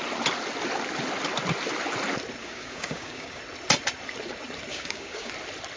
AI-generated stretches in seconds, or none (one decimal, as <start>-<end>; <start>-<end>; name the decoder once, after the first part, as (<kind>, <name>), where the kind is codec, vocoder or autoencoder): 2.4-3.4 (codec, DAC); 4.7-5.3